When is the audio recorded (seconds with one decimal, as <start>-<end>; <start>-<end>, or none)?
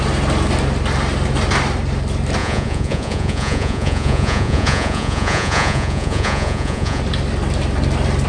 0.0-2.4; 7.0-8.3